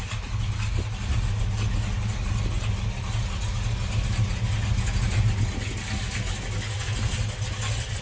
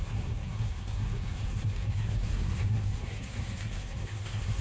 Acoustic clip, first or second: first